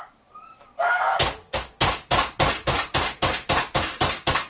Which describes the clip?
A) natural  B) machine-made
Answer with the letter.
A